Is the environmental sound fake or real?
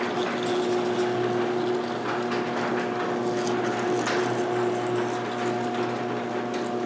real